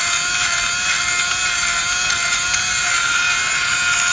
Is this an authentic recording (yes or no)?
yes